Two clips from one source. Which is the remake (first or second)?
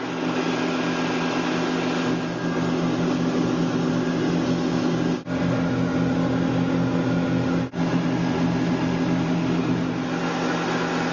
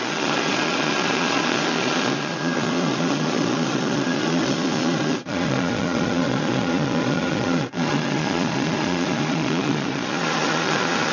second